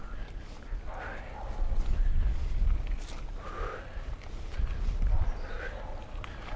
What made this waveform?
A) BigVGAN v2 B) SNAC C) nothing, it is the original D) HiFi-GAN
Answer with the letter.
C